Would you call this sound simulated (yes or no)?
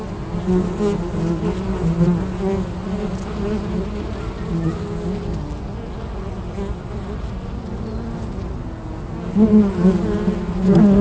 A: no